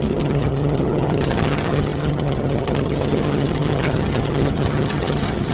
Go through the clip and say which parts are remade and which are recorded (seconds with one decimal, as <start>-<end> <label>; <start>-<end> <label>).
0.0-5.5 remade